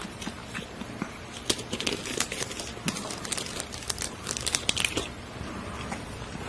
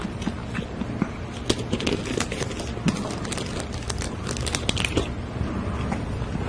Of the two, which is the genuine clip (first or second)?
second